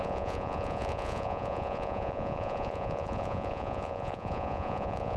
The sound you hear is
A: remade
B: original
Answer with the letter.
A